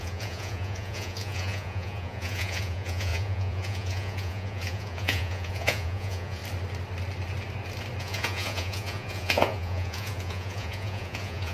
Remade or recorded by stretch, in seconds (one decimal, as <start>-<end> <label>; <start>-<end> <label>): 0.0-6.4 remade; 6.4-8.0 recorded; 8.0-11.5 remade